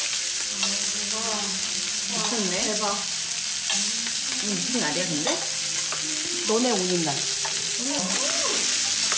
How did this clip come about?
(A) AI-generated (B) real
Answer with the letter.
B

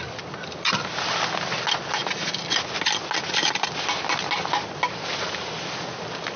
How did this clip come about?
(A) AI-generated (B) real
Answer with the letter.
B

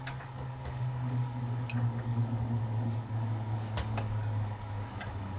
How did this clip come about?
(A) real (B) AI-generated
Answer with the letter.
B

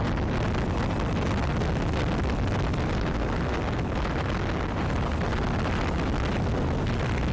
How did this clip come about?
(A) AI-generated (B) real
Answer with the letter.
B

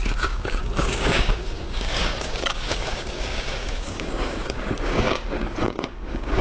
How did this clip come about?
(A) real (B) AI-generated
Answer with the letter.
B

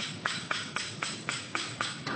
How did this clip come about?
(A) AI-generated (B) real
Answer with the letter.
A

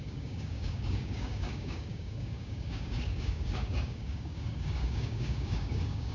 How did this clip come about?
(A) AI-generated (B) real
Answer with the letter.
A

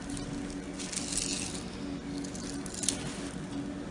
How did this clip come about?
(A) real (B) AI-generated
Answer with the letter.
A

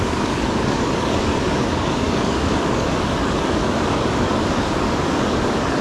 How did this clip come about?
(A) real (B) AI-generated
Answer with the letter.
B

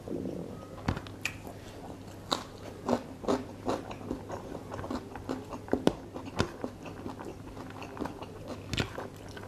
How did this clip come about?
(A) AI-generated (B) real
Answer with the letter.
B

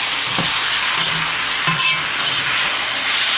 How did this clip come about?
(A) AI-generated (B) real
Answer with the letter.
B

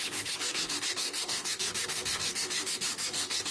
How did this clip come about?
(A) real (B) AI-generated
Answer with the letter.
B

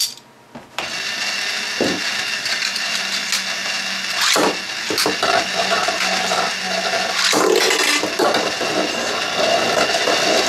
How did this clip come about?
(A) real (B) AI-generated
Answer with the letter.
A